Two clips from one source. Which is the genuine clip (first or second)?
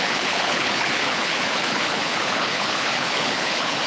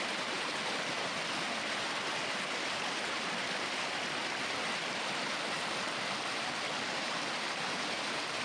second